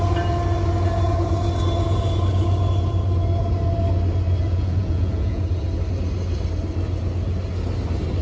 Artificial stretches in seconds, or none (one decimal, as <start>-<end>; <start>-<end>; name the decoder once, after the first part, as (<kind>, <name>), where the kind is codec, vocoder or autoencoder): 4.4-5.4 (vocoder, Vocos)